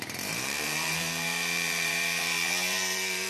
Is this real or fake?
fake